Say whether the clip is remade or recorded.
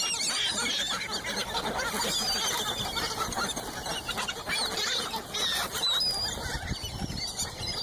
recorded